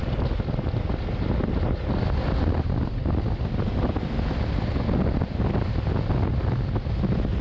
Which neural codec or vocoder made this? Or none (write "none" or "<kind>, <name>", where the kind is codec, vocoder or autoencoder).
none